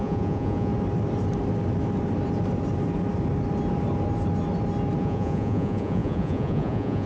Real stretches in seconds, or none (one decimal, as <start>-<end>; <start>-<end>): 0.7-5.0

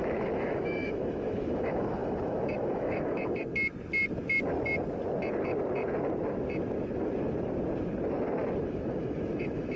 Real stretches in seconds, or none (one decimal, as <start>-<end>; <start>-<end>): 3.5-8.7

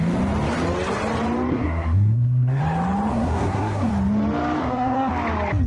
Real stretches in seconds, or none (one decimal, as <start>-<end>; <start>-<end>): 0.0-1.5; 2.6-3.1; 3.9-4.6; 5.1-5.7

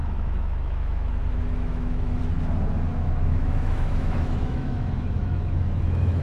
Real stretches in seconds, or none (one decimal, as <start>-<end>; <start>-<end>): 2.2-2.9

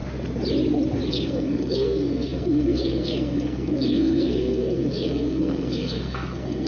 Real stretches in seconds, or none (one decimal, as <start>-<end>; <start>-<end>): 0.0-1.1